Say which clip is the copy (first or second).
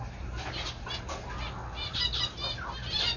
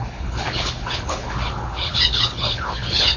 second